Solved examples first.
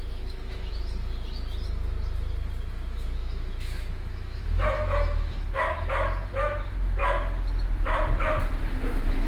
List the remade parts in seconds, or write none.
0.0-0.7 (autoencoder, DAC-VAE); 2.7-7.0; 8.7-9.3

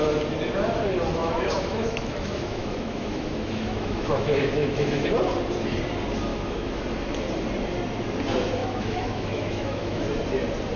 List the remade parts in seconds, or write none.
1.2-5.1 (autoencoder, DAC-VAE); 6.3-6.8; 8.6-10.0

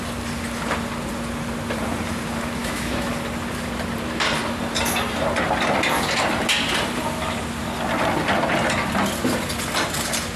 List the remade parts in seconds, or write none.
2.6-3.1 (autoencoder, DAC-VAE)

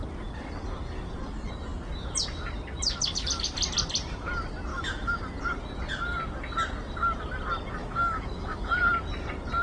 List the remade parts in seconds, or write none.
4.7-5.2 (autoencoder, DAC-VAE); 7.8-8.8

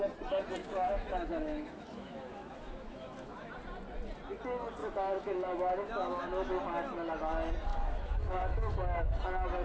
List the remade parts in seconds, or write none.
0.6-3.5 (autoencoder, DAC-VAE); 4.8-6.5; 7.7-9.2

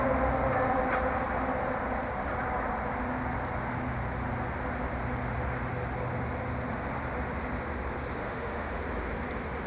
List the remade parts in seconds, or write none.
8.2-8.8 (autoencoder, DAC-VAE)

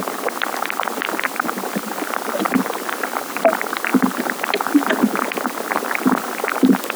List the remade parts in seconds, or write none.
none